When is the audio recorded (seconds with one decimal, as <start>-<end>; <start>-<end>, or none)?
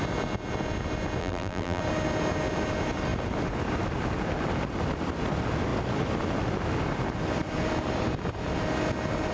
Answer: 0.0-1.2; 1.8-9.3